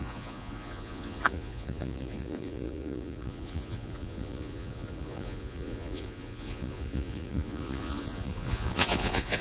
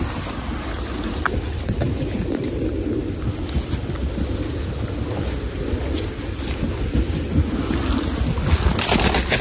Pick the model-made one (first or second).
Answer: first